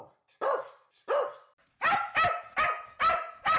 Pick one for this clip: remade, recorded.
recorded